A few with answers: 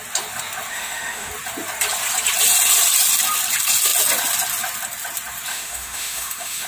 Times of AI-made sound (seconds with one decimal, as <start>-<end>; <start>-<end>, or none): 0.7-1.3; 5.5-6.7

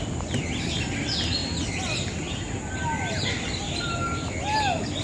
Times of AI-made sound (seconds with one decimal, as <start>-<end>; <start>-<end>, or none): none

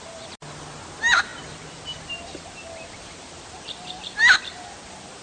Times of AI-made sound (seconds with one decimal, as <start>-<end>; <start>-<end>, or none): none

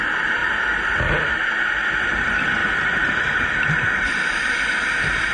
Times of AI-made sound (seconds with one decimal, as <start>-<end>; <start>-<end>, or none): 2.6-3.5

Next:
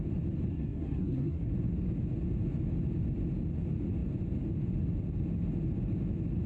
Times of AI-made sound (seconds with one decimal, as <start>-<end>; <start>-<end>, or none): 0.5-1.5